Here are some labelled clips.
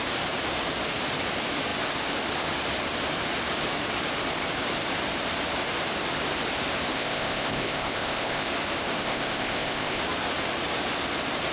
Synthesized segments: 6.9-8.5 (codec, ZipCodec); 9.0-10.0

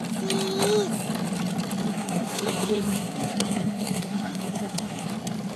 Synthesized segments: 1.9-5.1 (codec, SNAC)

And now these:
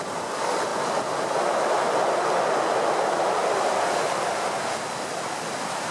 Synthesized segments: 3.4-4.0 (vocoder, BigVGAN v2)

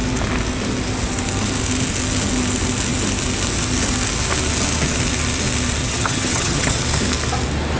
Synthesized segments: 5.8-6.8 (vocoder, HiFi-GAN)

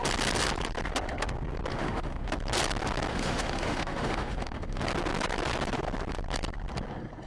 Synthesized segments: 1.7-2.3 (autoencoder, DAC-VAE); 3.1-4.8